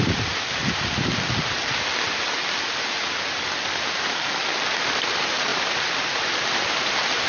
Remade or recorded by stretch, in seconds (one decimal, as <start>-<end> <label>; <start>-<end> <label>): 0.0-0.6 remade; 0.6-4.7 recorded; 4.7-7.3 remade

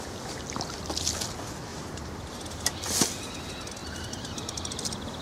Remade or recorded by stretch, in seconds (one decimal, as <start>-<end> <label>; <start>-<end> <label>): 0.0-1.7 recorded; 1.7-2.8 remade; 2.8-3.8 recorded; 3.8-4.7 remade; 4.7-5.2 recorded

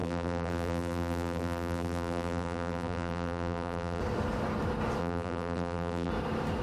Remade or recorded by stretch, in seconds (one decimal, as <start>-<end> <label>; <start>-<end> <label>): 0.0-4.0 remade; 4.0-5.0 recorded; 5.0-6.1 remade; 6.1-6.6 recorded

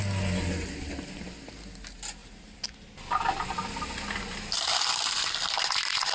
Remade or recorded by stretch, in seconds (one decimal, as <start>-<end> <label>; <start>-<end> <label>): 0.0-6.1 recorded

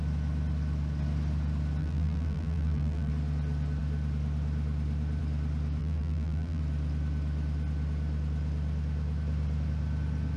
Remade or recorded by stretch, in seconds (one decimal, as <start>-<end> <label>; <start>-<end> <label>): 0.0-1.8 recorded; 1.8-3.1 remade; 3.1-5.8 recorded; 5.8-6.6 remade; 6.6-10.4 recorded

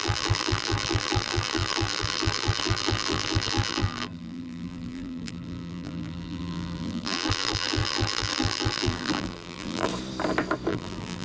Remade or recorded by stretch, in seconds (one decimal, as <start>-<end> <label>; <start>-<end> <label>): 0.0-9.9 remade; 9.9-10.7 recorded; 10.7-11.2 remade

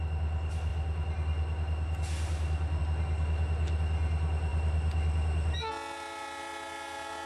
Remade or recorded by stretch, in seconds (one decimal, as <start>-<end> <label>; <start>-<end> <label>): 0.0-7.3 recorded

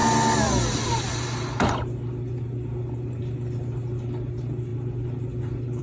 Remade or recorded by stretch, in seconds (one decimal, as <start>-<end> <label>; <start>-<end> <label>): 0.0-1.1 remade; 1.1-5.8 recorded